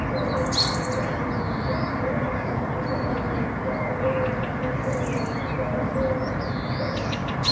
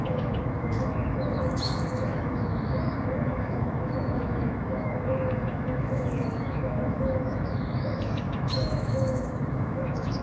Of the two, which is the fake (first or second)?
second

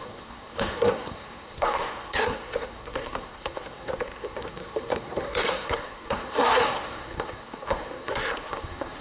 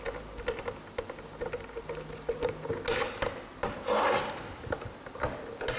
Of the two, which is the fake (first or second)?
first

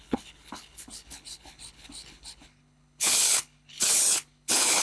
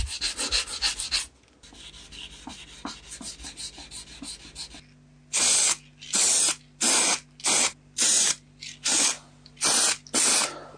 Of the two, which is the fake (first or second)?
first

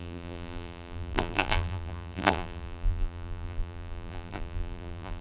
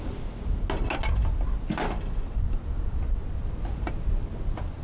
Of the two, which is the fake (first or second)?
first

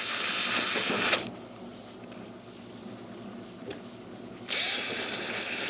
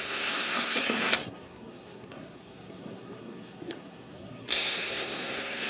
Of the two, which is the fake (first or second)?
second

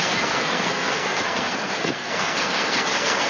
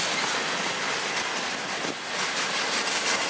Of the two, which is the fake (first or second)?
first